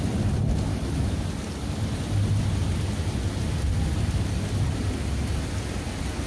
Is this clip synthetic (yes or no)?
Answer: no